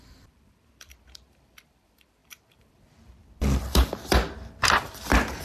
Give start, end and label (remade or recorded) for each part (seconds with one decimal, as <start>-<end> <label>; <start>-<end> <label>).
0.0-5.4 remade